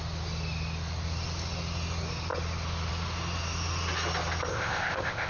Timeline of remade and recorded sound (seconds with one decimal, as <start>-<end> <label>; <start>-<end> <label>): 0.0-4.5 recorded; 4.5-5.3 remade